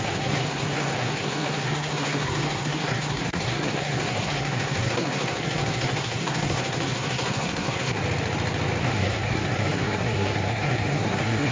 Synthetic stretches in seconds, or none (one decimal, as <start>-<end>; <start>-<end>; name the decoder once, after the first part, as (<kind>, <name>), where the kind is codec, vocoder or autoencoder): 0.0-8.0 (codec, SNAC); 8.8-11.5